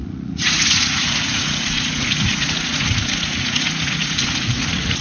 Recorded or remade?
remade